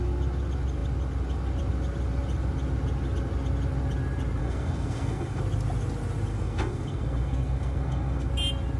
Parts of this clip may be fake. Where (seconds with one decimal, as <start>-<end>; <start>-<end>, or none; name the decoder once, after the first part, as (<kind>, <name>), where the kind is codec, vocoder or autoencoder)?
4.4-5.4 (codec, SNAC); 6.3-8.3

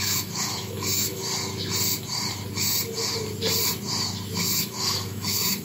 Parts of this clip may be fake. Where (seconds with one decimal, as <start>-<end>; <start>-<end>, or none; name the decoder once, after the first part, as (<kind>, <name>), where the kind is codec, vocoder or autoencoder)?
0.0-1.2 (autoencoder, DAC-VAE); 4.6-5.6

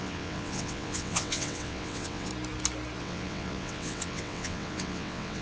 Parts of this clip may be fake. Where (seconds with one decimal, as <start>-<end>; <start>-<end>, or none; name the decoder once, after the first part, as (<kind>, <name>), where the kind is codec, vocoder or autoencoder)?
0.0-2.3 (vocoder, WaveNeXt); 3.0-5.4

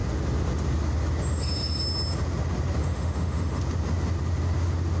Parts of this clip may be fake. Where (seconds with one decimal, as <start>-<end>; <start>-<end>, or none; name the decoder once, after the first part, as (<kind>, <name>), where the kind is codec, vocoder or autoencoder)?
2.8-3.6 (autoencoder, DAC-VAE)